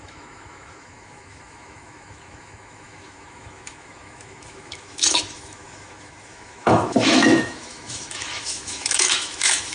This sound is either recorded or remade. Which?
remade